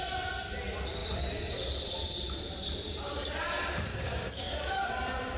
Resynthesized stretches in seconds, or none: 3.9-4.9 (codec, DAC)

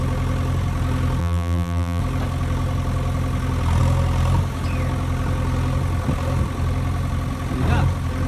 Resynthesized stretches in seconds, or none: 1.2-2.0 (vocoder, BigVGAN v2)